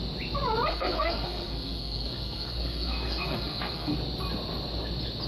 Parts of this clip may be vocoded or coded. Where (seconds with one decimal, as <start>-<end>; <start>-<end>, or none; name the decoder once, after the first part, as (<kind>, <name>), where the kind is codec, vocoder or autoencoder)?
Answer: 0.7-3.9 (codec, SNAC)